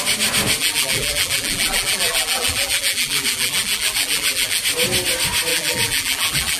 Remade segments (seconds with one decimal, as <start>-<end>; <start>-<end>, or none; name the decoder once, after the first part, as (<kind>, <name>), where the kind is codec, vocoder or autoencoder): 0.6-4.6 (vocoder, BigVGAN v2); 5.5-6.6